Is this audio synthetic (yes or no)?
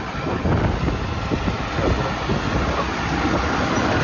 no